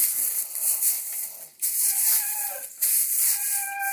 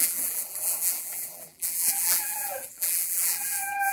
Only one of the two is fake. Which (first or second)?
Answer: second